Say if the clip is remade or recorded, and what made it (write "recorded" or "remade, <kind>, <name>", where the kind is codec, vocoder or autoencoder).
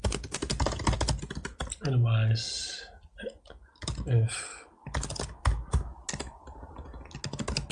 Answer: recorded